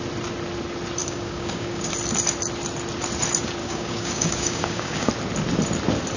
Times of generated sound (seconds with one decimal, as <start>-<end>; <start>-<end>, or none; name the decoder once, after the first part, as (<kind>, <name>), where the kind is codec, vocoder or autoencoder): 1.0-1.9 (codec, DAC); 3.6-5.1